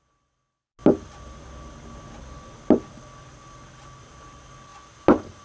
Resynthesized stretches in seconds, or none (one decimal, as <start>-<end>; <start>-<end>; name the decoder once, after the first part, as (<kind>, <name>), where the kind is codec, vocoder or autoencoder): none